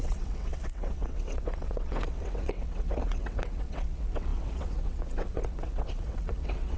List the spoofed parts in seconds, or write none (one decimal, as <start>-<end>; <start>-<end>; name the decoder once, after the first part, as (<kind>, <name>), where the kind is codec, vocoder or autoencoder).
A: 0.0-6.8 (vocoder, WaveNeXt)